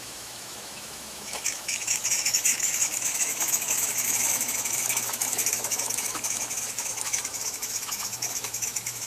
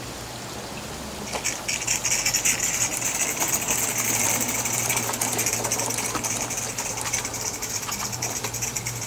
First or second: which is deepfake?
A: first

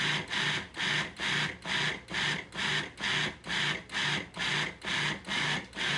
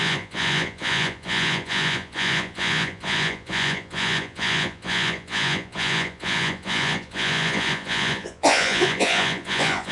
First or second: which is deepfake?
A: second